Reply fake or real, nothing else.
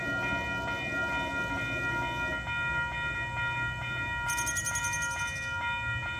real